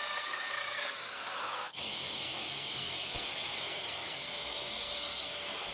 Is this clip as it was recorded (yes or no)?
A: no